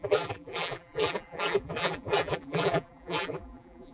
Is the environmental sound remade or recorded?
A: remade